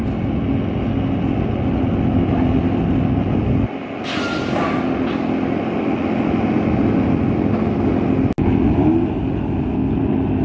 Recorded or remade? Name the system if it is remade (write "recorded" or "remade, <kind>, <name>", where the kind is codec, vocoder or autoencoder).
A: recorded